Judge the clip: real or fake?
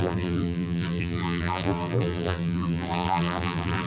fake